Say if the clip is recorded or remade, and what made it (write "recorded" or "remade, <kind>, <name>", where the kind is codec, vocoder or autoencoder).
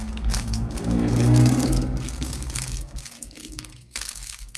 remade, codec, SNAC